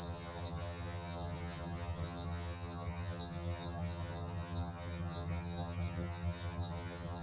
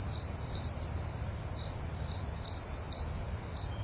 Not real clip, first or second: first